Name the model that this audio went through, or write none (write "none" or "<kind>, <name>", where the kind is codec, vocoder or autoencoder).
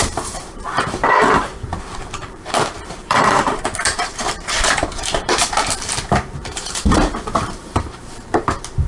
vocoder, BigVGAN v2